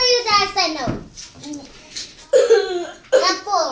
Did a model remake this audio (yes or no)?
no